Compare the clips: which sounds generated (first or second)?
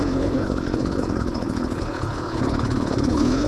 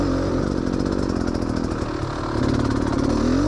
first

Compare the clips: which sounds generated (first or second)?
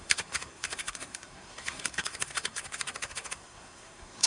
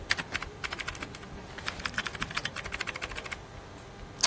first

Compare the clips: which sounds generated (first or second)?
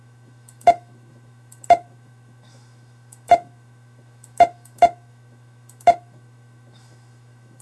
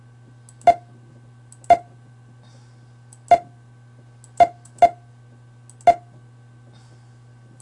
first